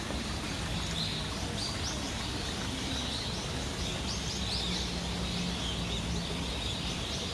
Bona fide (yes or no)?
yes